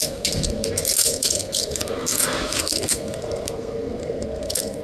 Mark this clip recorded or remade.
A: remade